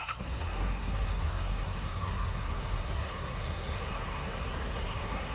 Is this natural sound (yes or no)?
no